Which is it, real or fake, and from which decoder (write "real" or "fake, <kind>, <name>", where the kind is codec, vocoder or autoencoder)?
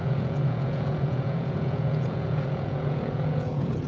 fake, vocoder, Vocos